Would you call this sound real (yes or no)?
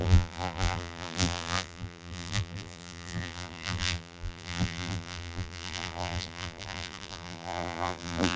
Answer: no